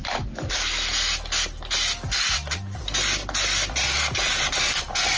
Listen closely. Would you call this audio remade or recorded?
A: recorded